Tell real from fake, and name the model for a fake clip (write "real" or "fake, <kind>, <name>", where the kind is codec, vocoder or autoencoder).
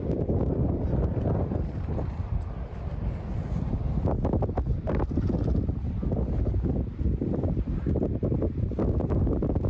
real